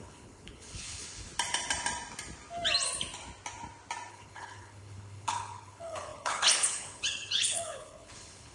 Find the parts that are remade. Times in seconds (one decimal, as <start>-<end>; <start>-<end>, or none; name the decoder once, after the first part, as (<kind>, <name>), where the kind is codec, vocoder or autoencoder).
0.0-1.3 (codec, HILCodec); 4.1-8.5